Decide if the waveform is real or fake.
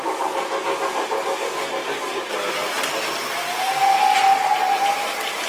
real